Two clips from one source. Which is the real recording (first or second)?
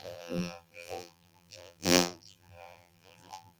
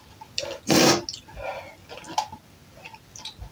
second